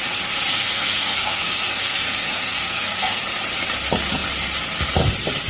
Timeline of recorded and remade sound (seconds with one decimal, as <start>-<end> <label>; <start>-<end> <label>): 0.0-0.5 recorded; 0.5-3.2 remade; 3.2-5.5 recorded

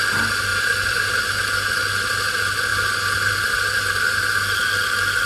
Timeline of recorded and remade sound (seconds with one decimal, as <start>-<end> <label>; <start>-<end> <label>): 0.0-0.5 recorded; 0.5-1.4 remade; 1.4-5.3 recorded

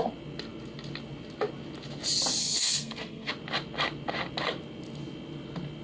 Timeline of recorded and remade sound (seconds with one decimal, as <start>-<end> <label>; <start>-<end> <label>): 0.0-2.4 recorded; 2.4-3.3 remade; 3.3-5.8 recorded

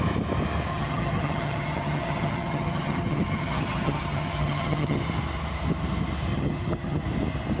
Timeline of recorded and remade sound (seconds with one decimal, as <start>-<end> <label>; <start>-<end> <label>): 0.0-0.7 recorded; 0.7-5.0 remade; 5.0-6.3 recorded; 6.3-7.0 remade; 7.0-7.6 recorded

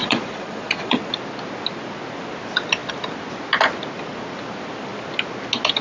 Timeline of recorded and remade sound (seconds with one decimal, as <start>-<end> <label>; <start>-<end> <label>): 0.0-1.1 remade; 1.1-5.8 recorded